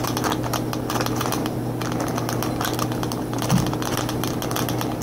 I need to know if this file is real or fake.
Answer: real